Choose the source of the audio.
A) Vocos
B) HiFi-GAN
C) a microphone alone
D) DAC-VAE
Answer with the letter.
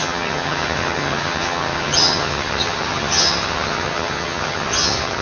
B